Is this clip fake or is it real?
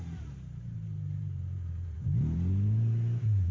fake